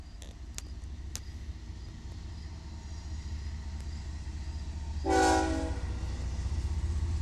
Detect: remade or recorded recorded